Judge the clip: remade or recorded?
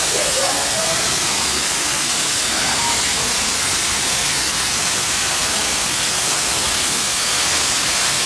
remade